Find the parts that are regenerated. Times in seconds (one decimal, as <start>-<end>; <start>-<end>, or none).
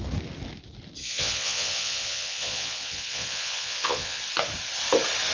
1.0-4.2